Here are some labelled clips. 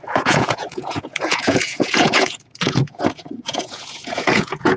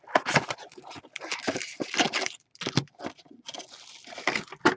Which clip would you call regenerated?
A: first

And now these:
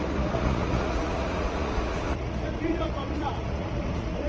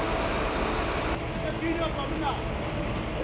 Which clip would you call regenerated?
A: first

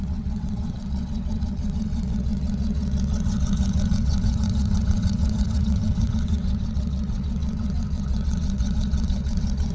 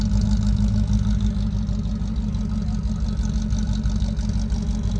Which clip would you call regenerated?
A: first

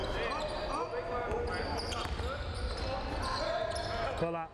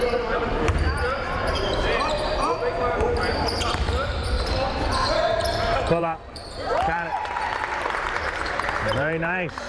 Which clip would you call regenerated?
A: second